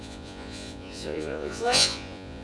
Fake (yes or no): yes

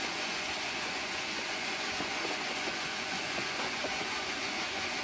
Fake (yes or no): yes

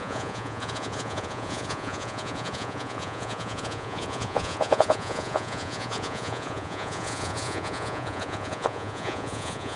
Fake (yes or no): yes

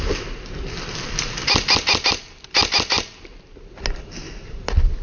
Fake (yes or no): no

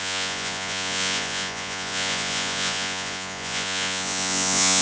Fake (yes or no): yes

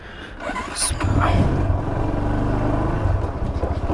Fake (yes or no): no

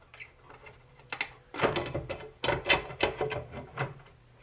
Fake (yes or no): no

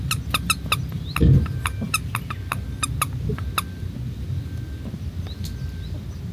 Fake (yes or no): no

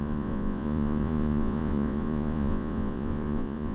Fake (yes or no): yes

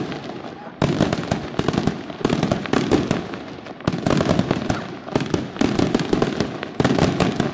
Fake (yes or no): no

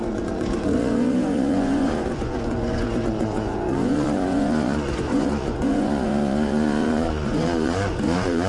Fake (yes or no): yes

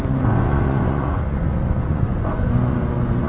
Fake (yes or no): yes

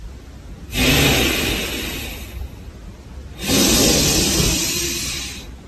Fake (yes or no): no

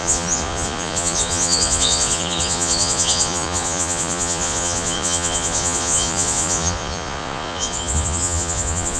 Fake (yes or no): yes